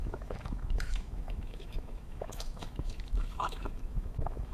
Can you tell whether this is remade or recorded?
remade